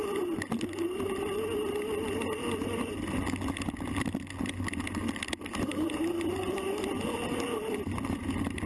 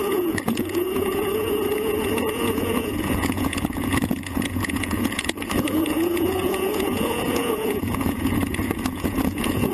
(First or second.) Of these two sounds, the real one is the first